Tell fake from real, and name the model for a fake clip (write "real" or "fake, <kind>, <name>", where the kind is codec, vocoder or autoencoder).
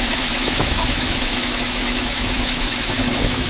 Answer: fake, autoencoder, DAC-VAE